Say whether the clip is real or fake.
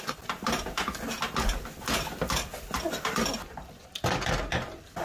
real